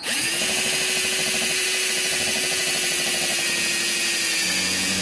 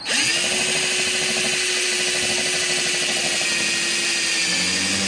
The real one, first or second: second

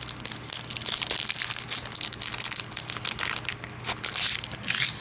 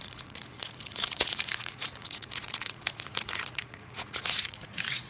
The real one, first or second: first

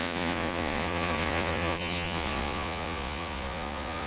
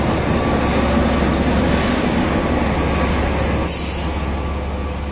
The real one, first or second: second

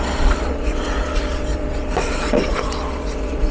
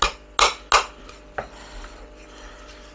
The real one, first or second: second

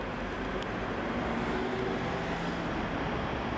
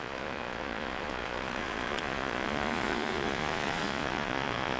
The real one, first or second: first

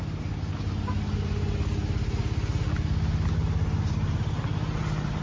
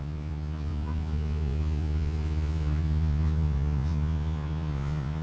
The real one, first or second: first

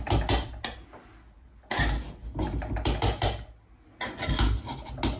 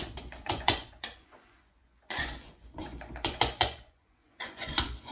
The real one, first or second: first